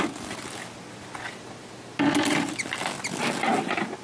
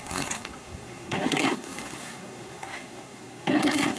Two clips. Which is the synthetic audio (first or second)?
second